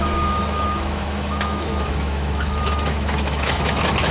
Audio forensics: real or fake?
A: fake